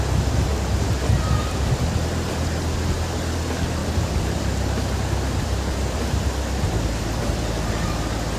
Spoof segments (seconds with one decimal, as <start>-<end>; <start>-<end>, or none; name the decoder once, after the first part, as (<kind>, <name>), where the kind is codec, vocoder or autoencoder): 0.5-2.3 (vocoder, BigVGAN v2); 3.8-7.2